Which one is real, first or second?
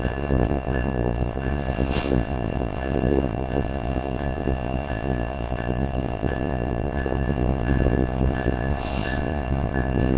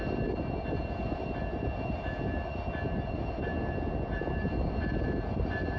second